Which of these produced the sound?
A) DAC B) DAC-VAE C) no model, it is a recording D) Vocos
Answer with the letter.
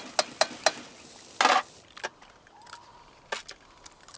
C